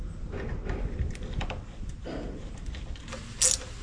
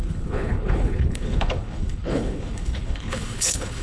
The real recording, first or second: first